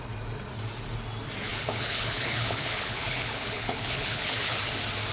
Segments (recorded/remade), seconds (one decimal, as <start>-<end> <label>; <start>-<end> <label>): 0.0-1.5 recorded; 1.5-4.6 remade; 4.6-5.1 recorded